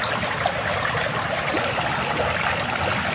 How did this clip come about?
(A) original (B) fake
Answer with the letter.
A